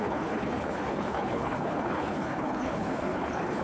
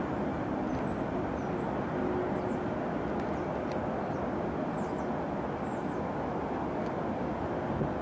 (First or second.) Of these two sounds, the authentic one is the second